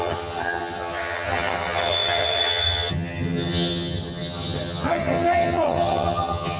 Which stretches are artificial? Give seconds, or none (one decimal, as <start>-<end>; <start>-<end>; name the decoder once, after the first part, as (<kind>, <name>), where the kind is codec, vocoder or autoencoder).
0.0-6.6 (vocoder, HiFi-GAN)